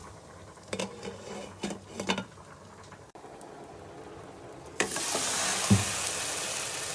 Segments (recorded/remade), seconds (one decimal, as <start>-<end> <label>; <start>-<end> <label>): 0.0-0.8 remade; 0.8-6.9 recorded